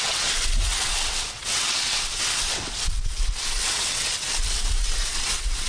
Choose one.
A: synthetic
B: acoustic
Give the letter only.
A